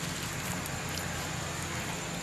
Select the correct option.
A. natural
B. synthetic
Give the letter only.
B